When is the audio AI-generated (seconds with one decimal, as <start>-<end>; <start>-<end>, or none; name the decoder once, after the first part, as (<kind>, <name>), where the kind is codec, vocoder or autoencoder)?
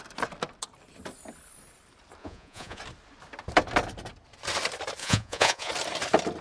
2.2-2.8 (vocoder, Vocos); 5.0-5.7